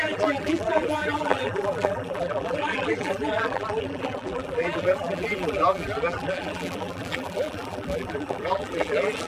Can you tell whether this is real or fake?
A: fake